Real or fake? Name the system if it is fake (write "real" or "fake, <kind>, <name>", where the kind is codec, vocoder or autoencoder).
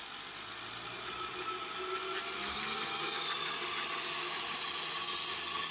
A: real